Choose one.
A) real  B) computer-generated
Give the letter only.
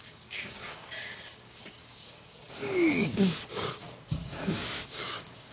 B